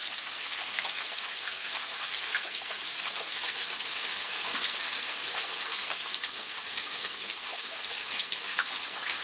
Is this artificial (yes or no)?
yes